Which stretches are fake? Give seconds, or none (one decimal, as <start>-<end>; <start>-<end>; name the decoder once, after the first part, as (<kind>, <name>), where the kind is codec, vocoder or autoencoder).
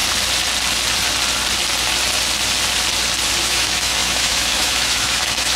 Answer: 3.4-5.6 (autoencoder, DAC-VAE)